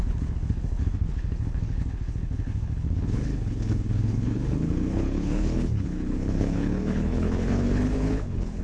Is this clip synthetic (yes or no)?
yes